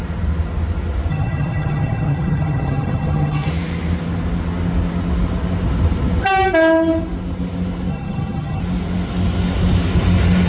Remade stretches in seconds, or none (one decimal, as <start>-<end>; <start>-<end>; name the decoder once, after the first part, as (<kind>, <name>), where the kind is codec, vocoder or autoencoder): 1.1-3.5 (vocoder, HiFi-GAN); 7.9-8.6